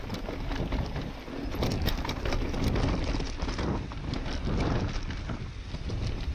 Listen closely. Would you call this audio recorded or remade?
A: recorded